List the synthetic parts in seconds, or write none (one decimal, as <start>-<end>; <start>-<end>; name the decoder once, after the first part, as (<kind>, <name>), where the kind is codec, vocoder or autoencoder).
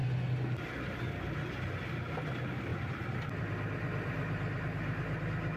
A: none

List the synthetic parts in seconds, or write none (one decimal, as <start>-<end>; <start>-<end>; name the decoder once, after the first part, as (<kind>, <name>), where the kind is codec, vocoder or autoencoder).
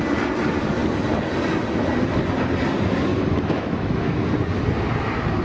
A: 3.1-4.3 (autoencoder, DAC-VAE)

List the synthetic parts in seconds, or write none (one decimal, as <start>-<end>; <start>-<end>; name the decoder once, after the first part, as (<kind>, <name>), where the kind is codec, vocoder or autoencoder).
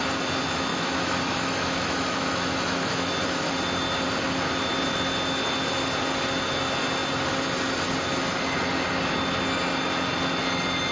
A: 0.7-3.5 (autoencoder, DAC-VAE)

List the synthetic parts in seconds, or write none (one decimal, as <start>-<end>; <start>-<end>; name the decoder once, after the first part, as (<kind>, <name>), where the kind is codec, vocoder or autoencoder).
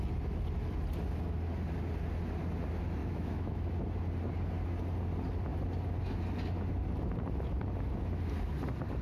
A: 3.0-3.7 (autoencoder, DAC-VAE)